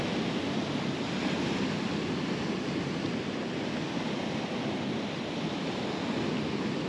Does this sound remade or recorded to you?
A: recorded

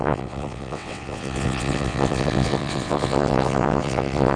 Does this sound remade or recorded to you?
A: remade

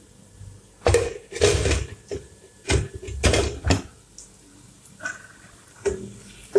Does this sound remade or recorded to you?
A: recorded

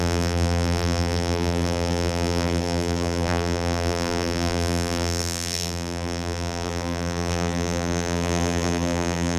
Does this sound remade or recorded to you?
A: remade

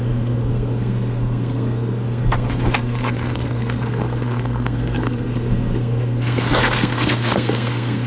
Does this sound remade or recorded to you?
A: remade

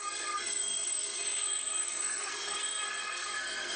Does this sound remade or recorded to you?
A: remade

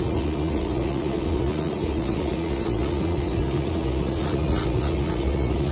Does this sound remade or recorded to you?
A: remade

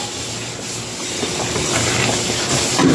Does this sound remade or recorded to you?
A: recorded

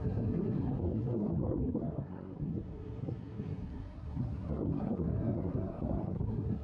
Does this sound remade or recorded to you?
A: remade